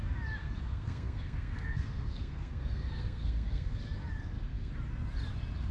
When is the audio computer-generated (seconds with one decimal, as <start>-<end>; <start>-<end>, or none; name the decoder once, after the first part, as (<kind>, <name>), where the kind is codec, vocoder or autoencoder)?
0.4-3.8 (codec, SNAC); 4.2-4.7